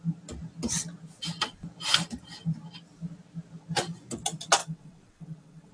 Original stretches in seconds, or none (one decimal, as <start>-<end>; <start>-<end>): 0.0-4.6